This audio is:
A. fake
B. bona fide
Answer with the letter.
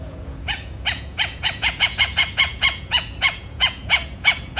A